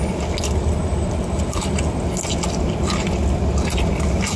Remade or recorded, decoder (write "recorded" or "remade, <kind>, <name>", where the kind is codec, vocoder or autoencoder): recorded